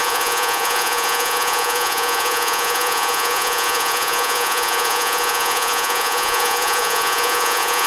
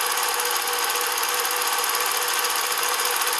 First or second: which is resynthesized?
first